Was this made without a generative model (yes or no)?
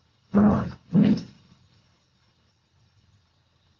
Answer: no